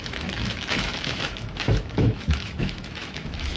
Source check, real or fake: fake